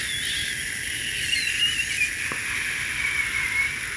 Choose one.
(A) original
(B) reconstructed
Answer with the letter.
A